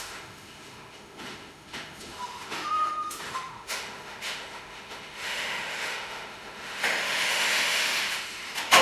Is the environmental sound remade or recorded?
remade